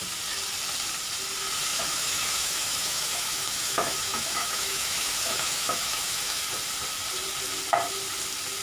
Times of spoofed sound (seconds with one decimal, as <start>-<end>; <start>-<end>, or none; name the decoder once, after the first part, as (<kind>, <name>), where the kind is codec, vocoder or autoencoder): 1.7-6.4 (autoencoder, DAC-VAE)